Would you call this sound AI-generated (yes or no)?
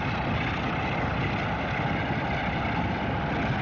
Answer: no